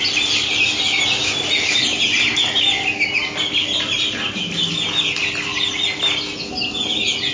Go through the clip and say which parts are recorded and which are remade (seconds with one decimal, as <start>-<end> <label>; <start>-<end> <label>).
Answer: 0.0-7.3 recorded